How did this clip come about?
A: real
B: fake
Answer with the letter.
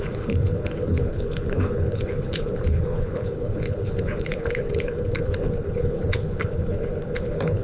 B